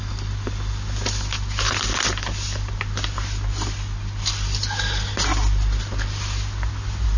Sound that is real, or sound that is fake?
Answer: real